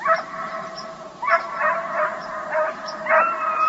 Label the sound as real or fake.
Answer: fake